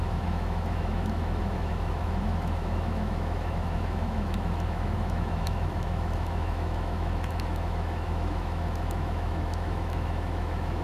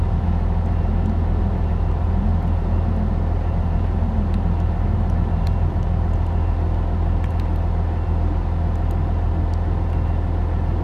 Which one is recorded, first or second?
second